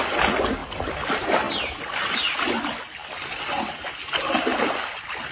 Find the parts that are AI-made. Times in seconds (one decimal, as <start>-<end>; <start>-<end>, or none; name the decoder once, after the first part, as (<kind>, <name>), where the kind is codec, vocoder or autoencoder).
none